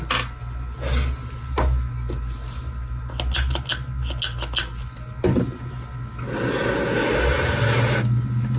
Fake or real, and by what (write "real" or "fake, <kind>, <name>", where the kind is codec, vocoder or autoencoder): real